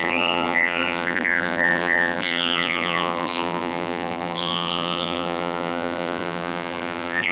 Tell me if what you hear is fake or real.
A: fake